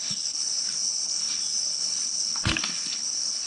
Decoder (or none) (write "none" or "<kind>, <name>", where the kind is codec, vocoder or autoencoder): codec, HILCodec